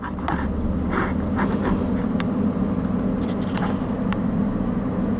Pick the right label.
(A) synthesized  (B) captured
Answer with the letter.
B